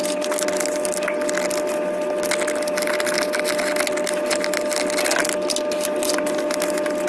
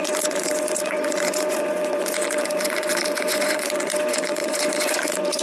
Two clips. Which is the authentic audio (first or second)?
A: first